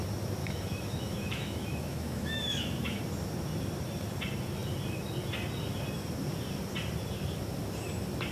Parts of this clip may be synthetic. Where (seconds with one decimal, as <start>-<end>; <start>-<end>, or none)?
0.4-3.0